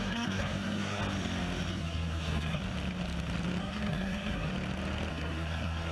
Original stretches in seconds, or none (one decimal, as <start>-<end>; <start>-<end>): 1.0-1.7; 2.6-3.6; 4.5-5.1